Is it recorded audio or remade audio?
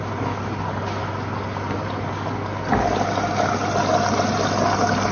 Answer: recorded